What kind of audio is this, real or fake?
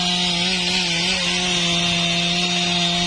real